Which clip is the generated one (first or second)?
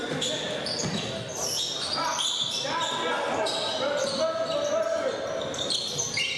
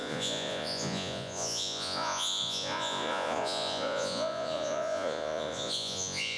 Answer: second